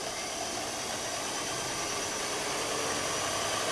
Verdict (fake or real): real